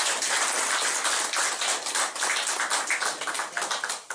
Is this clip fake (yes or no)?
no